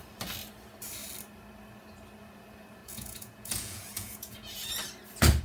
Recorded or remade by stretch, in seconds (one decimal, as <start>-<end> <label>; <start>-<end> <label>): 0.0-2.8 recorded; 2.8-4.7 remade; 4.7-5.4 recorded